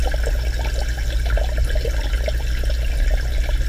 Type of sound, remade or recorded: recorded